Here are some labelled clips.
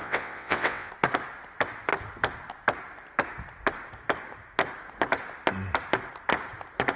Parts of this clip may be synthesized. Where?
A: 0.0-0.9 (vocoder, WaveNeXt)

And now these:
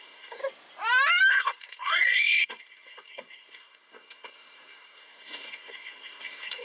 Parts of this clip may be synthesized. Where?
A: 0.0-0.4 (codec, SNAC); 1.3-6.6

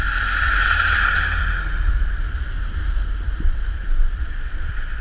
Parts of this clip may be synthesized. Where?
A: 1.7-5.0 (vocoder, BigVGAN v2)

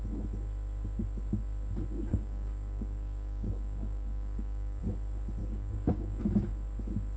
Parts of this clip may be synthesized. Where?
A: 2.1-4.8 (codec, DAC); 5.4-6.2

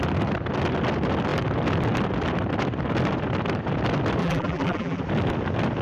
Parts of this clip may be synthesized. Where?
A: 4.2-5.0 (vocoder, BigVGAN v2)

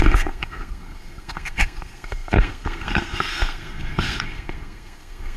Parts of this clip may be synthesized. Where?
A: 0.0-5.4 (codec, SNAC)